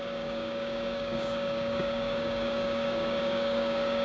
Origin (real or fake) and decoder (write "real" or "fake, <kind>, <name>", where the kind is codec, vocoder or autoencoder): fake, codec, DAC